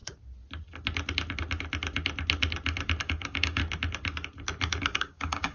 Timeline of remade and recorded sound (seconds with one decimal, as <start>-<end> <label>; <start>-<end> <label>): 0.0-3.0 recorded; 3.0-3.6 remade; 3.6-4.8 recorded; 4.8-5.5 remade